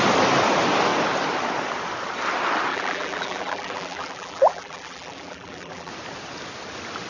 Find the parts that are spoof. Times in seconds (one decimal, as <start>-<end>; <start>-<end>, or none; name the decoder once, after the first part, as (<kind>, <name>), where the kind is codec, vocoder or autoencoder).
2.7-5.9 (vocoder, BigVGAN v2)